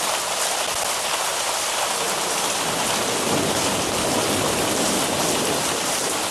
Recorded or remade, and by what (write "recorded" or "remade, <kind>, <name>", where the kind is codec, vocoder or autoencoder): recorded